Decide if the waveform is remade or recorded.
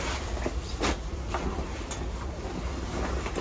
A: recorded